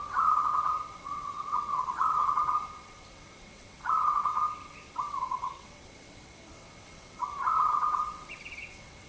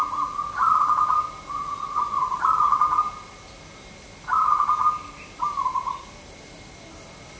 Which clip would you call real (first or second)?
second